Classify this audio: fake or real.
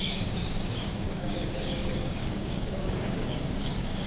fake